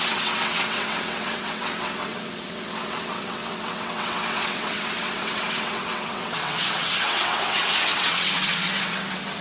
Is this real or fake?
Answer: fake